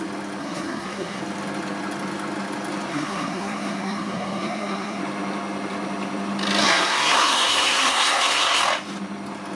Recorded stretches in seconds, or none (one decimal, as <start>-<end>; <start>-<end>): 0.0-0.4; 1.2-2.9; 5.0-6.6; 8.6-9.6